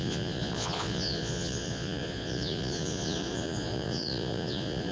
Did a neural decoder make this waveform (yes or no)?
yes